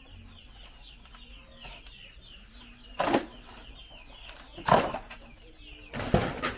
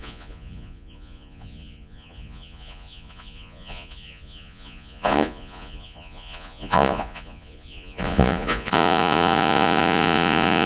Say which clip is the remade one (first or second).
second